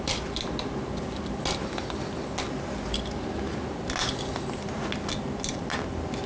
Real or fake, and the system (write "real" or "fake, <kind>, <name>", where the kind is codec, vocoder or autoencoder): real